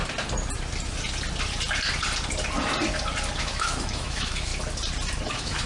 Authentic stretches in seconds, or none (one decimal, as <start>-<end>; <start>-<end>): 0.0-3.4; 4.5-5.2